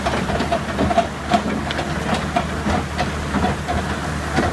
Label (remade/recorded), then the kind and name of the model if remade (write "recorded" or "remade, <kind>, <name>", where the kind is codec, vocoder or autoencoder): recorded